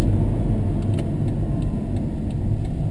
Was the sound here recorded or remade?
recorded